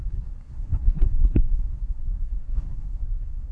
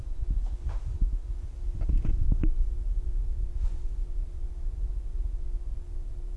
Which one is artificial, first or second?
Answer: first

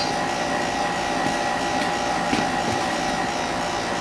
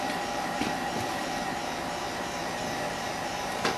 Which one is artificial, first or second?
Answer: second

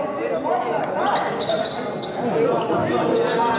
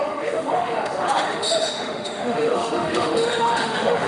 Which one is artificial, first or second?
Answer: second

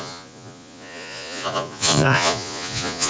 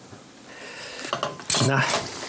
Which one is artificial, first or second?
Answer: first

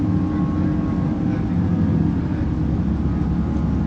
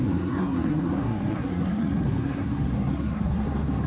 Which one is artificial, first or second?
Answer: second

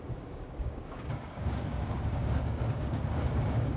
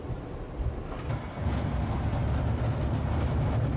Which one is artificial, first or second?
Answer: first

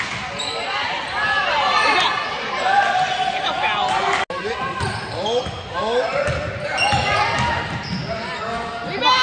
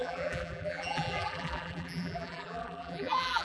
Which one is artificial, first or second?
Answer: second